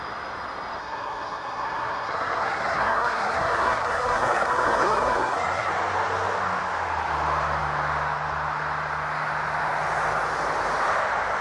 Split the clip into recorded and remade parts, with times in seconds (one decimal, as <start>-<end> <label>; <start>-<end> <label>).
0.0-0.8 recorded; 0.8-5.7 remade; 5.7-11.4 recorded